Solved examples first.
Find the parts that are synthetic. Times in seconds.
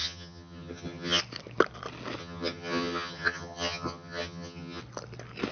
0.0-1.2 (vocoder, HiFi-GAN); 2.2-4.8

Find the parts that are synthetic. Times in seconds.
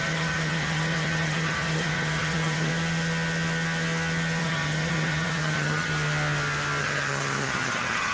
0.0-2.7 (vocoder, HiFi-GAN); 4.4-5.9; 6.8-8.1